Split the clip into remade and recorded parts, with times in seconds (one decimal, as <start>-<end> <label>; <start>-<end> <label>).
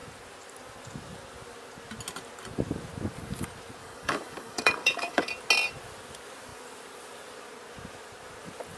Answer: 0.0-3.8 recorded; 3.8-5.3 remade; 5.3-8.8 recorded